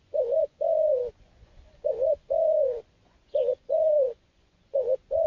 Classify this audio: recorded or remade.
remade